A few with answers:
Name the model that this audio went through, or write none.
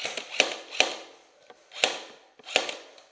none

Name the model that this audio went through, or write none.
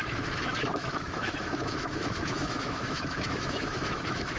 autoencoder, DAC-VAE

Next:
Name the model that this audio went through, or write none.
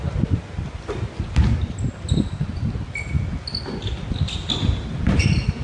none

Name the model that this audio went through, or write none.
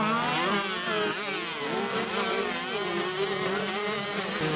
none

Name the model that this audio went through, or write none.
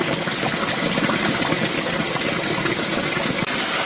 none